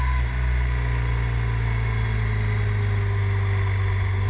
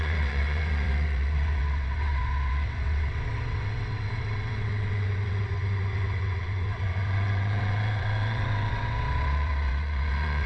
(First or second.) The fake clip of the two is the second